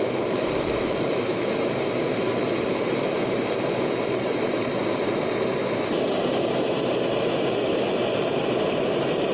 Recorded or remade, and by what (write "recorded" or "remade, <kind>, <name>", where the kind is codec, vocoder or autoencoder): remade, vocoder, BigVGAN v2